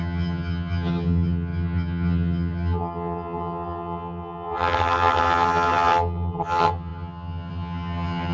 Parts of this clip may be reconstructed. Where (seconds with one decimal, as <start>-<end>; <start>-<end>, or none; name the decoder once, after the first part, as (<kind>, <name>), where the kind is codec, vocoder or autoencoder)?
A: 0.0-8.3 (vocoder, HiFi-GAN)